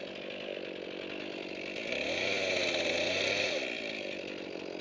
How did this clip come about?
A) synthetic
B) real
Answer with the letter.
B